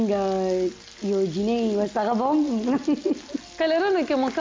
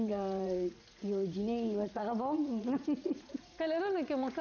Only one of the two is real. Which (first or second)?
first